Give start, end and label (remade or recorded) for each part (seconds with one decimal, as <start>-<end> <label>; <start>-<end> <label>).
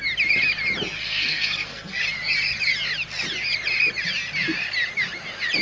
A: 0.0-1.0 recorded; 1.0-2.0 remade; 2.0-5.6 recorded